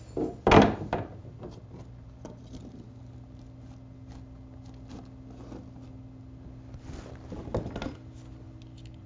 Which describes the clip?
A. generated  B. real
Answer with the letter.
B